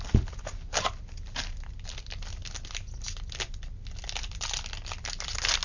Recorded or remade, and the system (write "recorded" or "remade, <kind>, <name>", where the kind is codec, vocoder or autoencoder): recorded